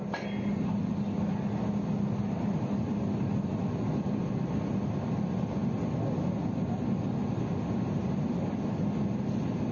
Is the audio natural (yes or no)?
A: yes